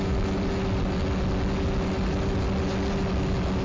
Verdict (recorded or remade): recorded